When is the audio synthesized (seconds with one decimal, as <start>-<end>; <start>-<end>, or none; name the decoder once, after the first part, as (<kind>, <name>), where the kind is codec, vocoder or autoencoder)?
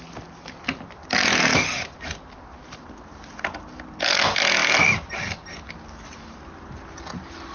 none